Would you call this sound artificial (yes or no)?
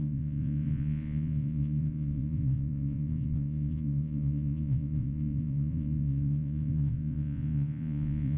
yes